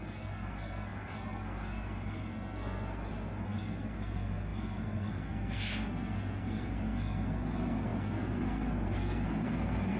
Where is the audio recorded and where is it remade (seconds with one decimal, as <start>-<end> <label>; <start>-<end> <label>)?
0.0-10.0 remade